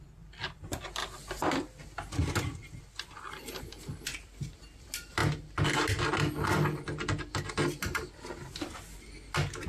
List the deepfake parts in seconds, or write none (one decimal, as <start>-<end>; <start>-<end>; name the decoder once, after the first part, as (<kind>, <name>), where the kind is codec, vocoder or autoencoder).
none